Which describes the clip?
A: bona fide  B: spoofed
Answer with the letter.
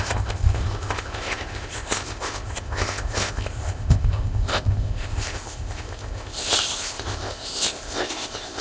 B